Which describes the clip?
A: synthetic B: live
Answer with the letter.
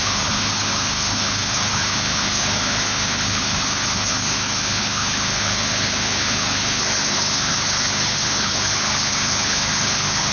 A